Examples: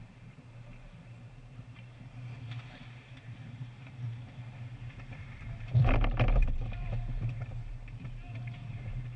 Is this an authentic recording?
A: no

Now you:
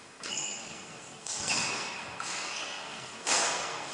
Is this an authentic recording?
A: no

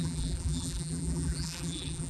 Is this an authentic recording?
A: no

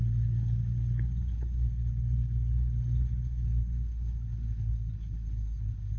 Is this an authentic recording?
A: no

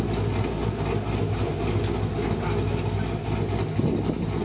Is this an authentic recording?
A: yes